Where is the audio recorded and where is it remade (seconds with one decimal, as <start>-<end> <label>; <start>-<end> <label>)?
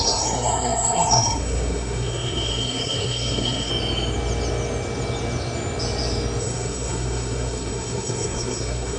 0.0-3.7 remade; 3.7-6.4 recorded; 6.4-9.0 remade